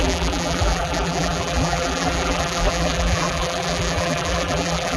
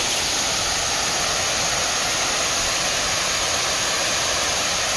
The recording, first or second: second